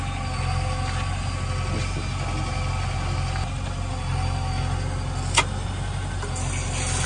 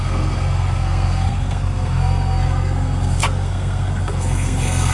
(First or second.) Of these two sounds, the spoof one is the second